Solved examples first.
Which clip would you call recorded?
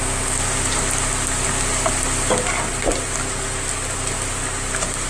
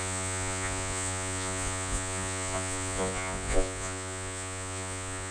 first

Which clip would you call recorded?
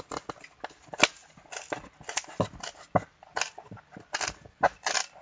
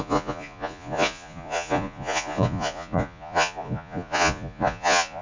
first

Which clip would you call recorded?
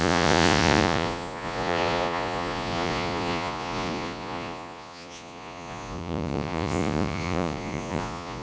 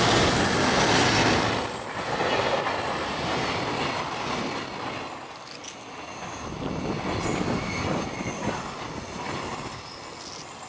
second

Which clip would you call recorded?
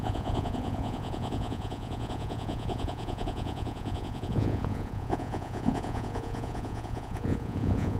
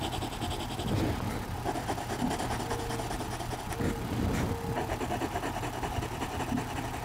second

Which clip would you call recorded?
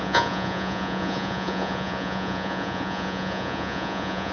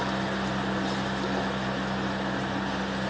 second